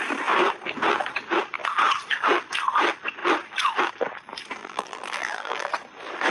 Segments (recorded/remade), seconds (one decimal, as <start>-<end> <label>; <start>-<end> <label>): 0.0-4.6 recorded; 4.6-5.7 remade; 5.7-6.3 recorded